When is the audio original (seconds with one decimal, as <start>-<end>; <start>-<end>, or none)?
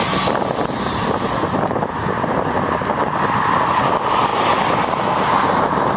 0.0-4.3; 4.9-6.0